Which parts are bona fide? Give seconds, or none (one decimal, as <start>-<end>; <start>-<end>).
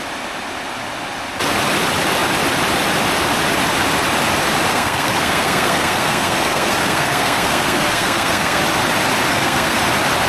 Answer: 0.0-4.7; 8.6-9.3; 9.8-10.3